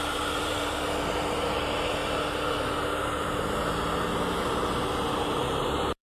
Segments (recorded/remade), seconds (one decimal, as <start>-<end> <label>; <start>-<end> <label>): 0.0-2.0 remade; 2.0-5.3 recorded; 5.3-6.0 remade